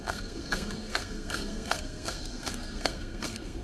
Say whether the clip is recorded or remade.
remade